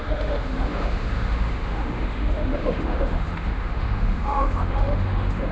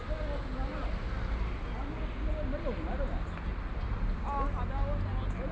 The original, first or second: second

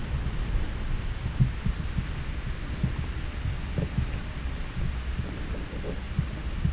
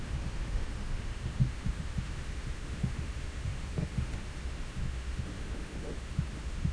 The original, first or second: first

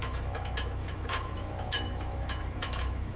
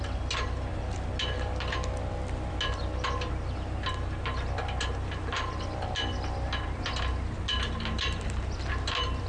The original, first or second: second